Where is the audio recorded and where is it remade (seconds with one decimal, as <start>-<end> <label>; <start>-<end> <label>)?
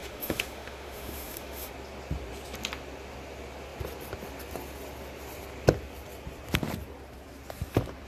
0.0-1.7 remade; 1.7-8.1 recorded